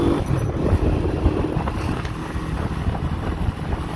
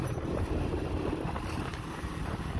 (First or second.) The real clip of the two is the first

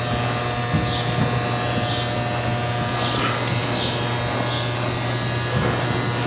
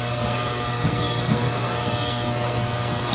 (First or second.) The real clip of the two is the first